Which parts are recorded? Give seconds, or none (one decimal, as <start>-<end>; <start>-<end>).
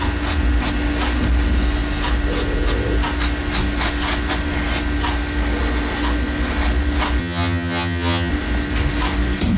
0.0-7.2; 8.3-9.6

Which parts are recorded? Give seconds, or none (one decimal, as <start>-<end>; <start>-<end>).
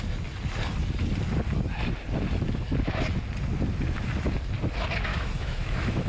0.0-5.1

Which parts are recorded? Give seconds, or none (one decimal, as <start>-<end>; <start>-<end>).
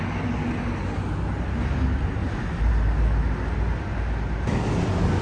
0.0-2.2; 2.7-5.2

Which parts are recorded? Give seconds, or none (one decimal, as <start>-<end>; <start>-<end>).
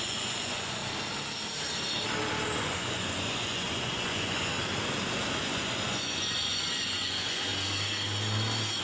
0.8-2.6; 4.5-5.4; 7.5-8.8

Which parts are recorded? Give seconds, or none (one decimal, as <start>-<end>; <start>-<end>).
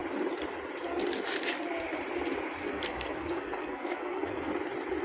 0.0-2.6; 4.5-5.0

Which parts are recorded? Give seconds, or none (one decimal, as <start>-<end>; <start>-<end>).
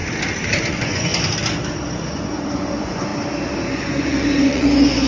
0.0-0.6; 1.1-2.1; 3.1-3.6